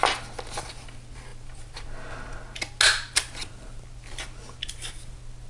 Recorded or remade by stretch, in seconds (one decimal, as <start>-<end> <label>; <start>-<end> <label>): 0.0-5.5 recorded